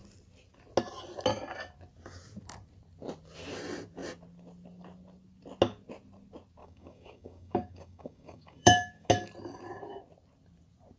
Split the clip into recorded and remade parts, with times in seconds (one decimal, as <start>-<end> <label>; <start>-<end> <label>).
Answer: 0.0-6.6 recorded; 6.6-9.1 remade; 9.1-11.0 recorded